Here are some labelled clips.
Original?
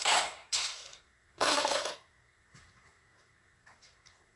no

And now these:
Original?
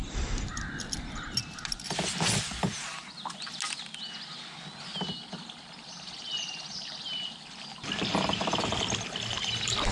yes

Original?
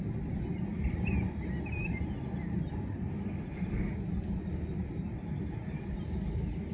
yes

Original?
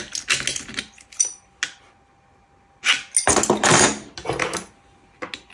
yes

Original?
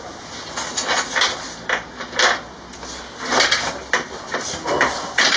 yes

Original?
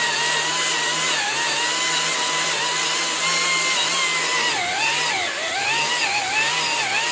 yes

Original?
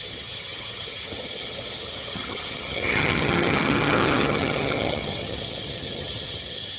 no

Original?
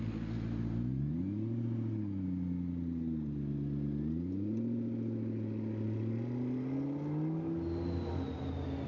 yes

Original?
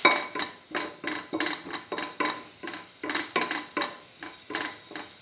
yes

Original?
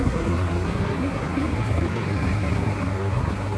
no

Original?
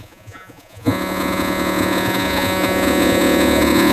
no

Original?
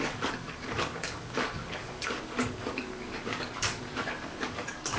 no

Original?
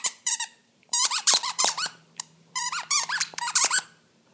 no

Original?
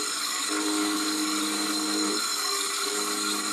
no